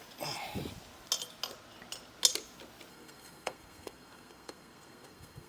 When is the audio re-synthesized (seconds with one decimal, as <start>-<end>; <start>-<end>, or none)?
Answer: 2.9-5.5